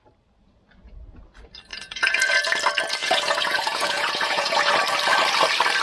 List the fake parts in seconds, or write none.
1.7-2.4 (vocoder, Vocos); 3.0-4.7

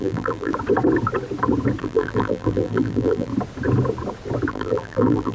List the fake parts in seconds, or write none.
0.0-0.5 (vocoder, BigVGAN v2); 1.8-3.3; 4.5-5.3

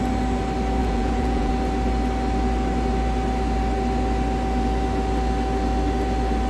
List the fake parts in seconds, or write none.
0.8-1.5 (vocoder, Vocos)

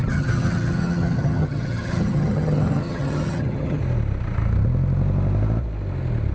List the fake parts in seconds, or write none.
0.0-3.8 (vocoder, HiFi-GAN)

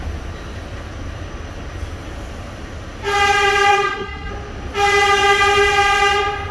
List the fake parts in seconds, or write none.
3.7-4.3 (codec, SNAC)

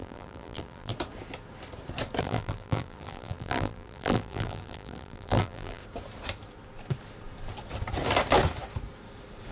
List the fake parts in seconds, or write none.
0.0-0.9 (vocoder, BigVGAN v2); 2.2-5.8